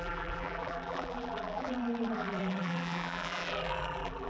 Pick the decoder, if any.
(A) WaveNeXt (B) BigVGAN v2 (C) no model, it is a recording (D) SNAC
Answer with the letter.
B